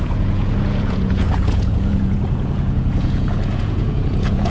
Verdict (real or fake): fake